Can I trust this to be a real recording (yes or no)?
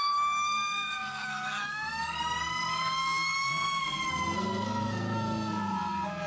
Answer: no